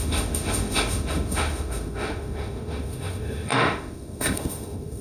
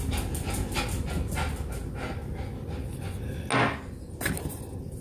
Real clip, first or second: second